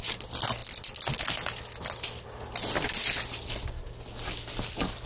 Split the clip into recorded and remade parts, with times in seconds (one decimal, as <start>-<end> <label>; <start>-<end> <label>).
0.0-5.1 recorded